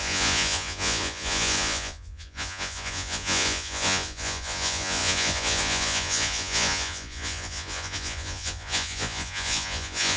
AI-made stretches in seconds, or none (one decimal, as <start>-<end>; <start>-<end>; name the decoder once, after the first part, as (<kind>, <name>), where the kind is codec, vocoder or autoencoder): 0.0-10.2 (vocoder, Vocos)